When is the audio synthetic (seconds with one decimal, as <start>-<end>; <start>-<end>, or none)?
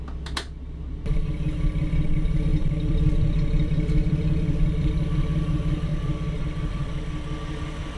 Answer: 2.5-4.9; 5.9-6.9